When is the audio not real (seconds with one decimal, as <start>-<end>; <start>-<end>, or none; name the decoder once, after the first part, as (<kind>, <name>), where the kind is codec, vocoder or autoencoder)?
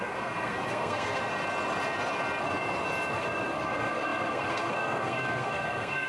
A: 0.0-1.2 (codec, SNAC); 3.1-6.1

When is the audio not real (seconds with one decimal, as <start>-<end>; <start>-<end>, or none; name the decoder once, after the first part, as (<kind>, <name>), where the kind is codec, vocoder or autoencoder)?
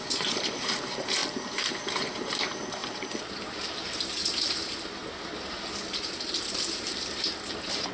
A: 0.0-5.0 (vocoder, BigVGAN v2); 6.4-7.9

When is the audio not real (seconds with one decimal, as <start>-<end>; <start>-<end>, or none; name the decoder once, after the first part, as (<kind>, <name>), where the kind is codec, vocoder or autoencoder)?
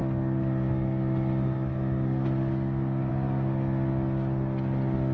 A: none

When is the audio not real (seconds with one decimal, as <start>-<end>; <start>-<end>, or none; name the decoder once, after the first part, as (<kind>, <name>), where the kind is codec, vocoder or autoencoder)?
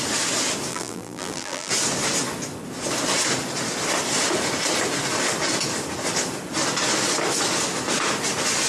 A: 0.7-1.7 (vocoder, BigVGAN v2)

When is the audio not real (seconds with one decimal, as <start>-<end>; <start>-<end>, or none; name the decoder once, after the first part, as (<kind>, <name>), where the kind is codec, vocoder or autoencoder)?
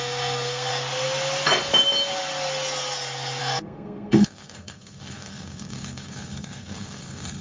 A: 0.0-0.7 (codec, SNAC); 3.4-7.4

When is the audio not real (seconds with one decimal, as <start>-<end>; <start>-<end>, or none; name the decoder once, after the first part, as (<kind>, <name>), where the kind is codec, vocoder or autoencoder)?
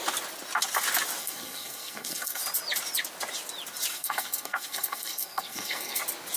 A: 1.2-2.4 (codec, SNAC); 3.9-6.0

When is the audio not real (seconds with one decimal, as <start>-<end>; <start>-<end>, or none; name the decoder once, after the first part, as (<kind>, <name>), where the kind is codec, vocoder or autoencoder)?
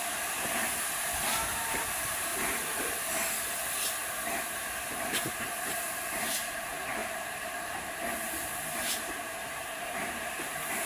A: 0.0-2.3 (vocoder, BigVGAN v2); 4.4-10.9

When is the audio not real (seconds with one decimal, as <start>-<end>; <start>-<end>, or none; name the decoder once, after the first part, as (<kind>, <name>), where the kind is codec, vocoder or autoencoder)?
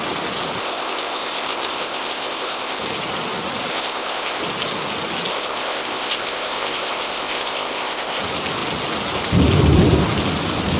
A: 0.6-2.8 (codec, ZipCodec); 3.7-4.4; 5.3-8.2